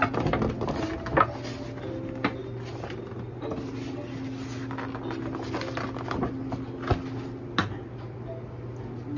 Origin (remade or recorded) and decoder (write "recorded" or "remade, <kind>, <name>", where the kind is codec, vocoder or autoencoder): recorded